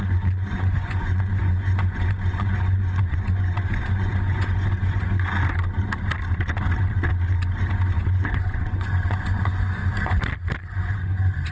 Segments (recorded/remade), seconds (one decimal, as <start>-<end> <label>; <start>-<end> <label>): 0.0-5.3 remade; 5.3-8.0 recorded; 8.0-9.8 remade; 9.8-10.6 recorded; 10.6-11.5 remade